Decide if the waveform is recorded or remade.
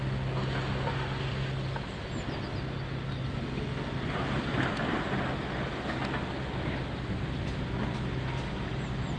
recorded